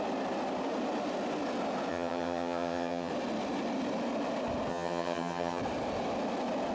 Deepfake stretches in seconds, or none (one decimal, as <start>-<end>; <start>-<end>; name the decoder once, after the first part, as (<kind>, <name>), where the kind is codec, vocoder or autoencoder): 1.9-3.1 (vocoder, HiFi-GAN); 4.7-5.6